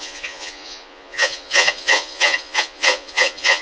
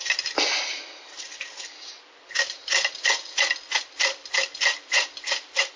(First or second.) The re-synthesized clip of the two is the first